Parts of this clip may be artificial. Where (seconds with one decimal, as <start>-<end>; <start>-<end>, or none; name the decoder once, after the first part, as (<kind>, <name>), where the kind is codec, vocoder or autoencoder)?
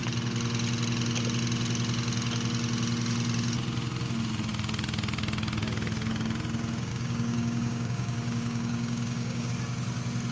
6.9-9.5 (codec, DAC)